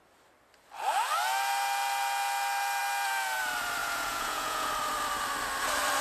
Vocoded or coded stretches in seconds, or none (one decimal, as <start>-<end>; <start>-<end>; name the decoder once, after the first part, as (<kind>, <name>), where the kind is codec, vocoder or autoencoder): 3.8-4.7 (vocoder, Vocos)